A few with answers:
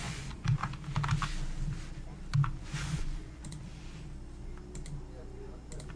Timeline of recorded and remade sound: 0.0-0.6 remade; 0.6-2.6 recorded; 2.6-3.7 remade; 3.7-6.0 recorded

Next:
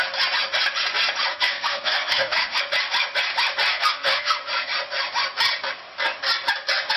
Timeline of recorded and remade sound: 0.0-1.3 recorded; 1.3-2.6 remade; 2.6-3.7 recorded; 3.7-4.4 remade; 4.4-7.0 recorded